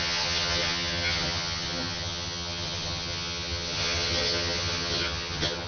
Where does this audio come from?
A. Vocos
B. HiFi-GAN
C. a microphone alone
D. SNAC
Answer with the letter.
B